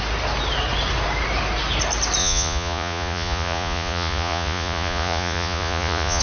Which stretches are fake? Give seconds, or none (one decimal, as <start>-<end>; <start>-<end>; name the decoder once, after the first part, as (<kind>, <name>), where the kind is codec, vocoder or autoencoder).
2.2-6.2 (vocoder, Vocos)